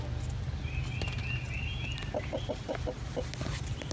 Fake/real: real